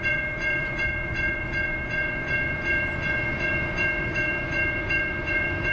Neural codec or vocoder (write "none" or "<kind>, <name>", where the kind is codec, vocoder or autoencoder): vocoder, Vocos